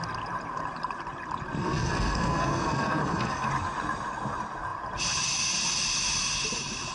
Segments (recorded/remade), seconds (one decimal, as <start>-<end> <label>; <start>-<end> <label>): 0.0-1.6 recorded; 1.6-3.5 remade; 3.5-6.9 recorded